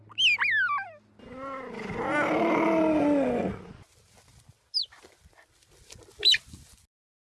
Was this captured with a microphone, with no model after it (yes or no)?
yes